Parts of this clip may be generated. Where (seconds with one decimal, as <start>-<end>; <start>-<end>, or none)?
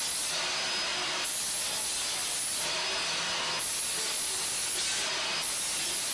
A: none